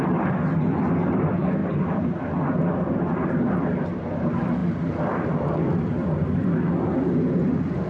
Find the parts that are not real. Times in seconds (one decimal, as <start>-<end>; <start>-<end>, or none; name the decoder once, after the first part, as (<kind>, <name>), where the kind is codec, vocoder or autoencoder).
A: 0.0-7.9 (vocoder, BigVGAN v2)

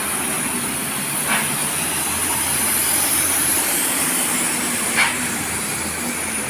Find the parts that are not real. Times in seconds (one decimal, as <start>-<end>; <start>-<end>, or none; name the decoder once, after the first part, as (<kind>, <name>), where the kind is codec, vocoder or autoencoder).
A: 2.2-5.6 (vocoder, BigVGAN v2)